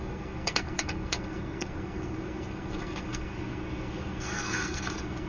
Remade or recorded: remade